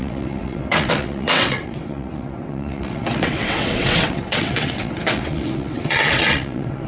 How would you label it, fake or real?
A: fake